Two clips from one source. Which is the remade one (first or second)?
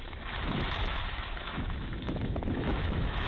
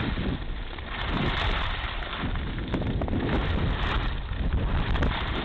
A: first